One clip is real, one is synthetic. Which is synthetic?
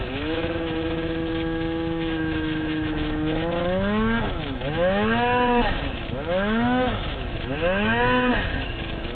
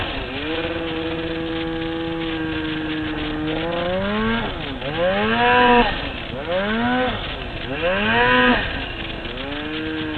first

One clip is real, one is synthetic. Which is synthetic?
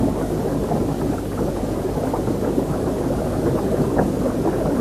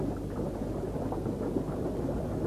first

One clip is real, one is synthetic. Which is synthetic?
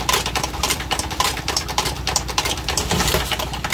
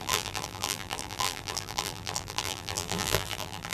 second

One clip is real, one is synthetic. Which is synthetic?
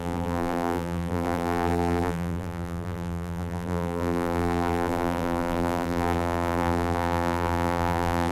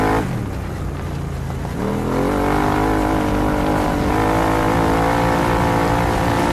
first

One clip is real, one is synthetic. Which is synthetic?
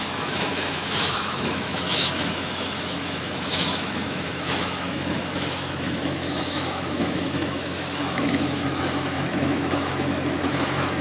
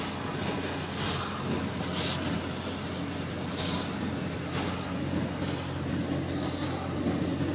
first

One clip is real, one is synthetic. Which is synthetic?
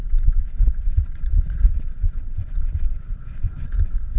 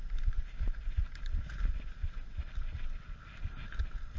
first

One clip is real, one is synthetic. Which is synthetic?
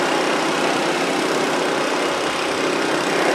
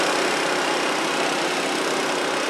first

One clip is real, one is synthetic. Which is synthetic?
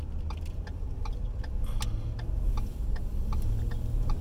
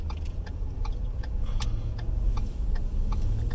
second